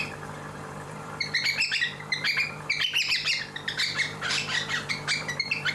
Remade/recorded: remade